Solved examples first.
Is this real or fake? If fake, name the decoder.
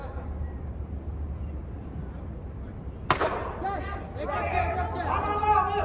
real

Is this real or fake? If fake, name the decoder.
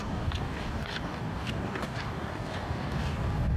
fake, codec, DAC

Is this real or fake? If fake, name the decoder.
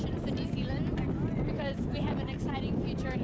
real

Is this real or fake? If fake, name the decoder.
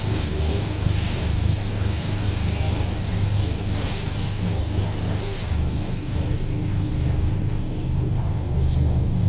fake, codec, DAC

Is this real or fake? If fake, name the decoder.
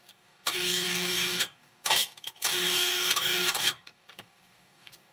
fake, codec, DAC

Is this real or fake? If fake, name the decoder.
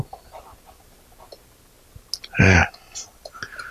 real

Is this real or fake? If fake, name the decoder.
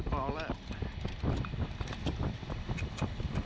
real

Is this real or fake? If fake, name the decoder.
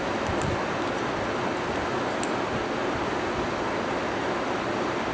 real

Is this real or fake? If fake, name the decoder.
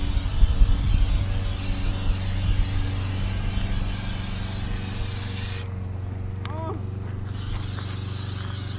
real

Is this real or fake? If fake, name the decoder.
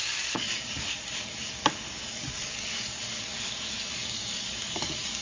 fake, codec, DAC